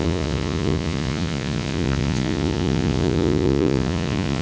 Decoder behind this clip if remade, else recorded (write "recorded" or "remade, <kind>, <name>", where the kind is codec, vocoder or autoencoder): remade, vocoder, Vocos